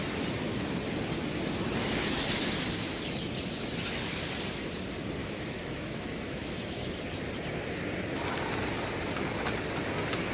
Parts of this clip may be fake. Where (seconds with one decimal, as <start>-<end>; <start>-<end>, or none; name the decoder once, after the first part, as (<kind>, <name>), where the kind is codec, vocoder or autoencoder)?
5.2-6.8 (autoencoder, DAC-VAE)